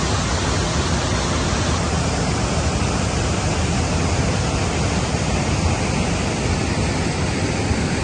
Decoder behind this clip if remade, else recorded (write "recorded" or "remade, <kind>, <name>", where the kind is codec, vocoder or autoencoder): recorded